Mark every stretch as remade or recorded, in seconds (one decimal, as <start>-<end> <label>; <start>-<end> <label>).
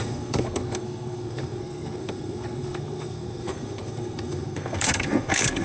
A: 0.0-5.6 remade